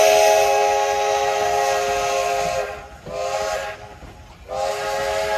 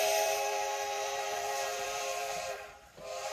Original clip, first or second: first